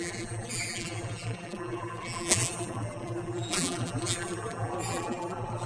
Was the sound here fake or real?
fake